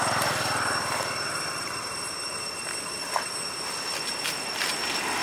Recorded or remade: recorded